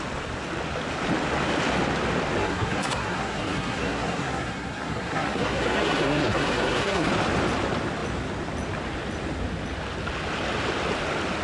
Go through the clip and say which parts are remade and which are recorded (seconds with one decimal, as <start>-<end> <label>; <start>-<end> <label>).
0.0-2.4 recorded; 2.4-7.1 remade; 7.1-11.4 recorded